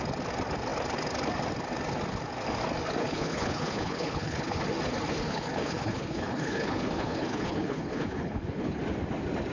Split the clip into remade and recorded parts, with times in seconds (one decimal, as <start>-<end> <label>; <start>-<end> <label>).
0.0-3.0 recorded; 3.0-4.6 remade; 4.6-5.1 recorded; 5.1-8.8 remade; 8.8-9.5 recorded